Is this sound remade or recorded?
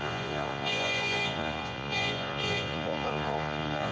remade